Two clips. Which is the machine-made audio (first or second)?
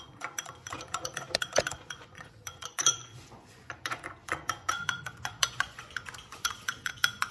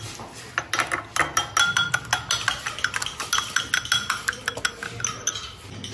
first